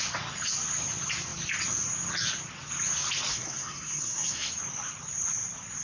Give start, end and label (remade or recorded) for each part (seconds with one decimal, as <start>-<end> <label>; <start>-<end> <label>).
0.0-3.3 recorded; 3.3-4.5 remade; 4.5-5.8 recorded